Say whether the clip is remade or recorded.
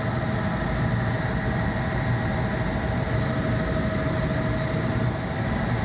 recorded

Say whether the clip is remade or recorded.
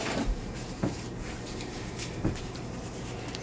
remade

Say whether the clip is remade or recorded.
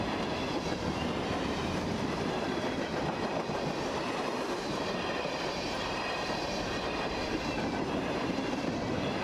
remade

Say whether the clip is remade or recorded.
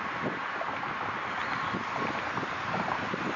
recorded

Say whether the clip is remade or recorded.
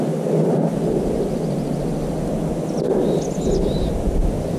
recorded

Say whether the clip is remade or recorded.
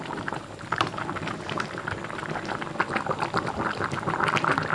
recorded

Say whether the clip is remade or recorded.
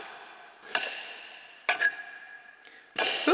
remade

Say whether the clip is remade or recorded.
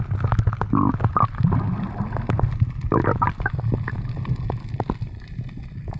recorded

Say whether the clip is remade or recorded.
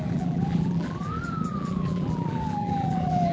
remade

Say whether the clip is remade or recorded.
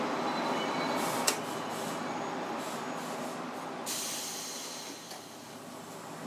recorded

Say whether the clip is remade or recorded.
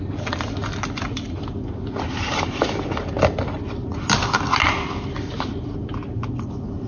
recorded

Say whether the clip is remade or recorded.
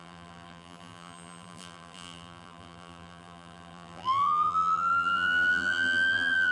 remade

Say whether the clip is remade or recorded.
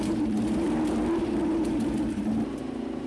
remade